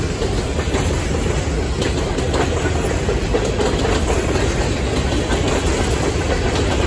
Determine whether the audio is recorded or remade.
recorded